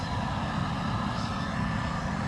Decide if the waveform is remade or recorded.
recorded